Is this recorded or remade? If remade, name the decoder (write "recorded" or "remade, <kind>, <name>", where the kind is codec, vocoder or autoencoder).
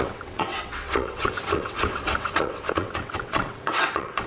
remade, vocoder, WaveNeXt